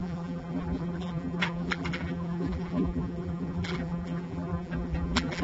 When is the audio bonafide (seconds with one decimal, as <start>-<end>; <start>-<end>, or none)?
none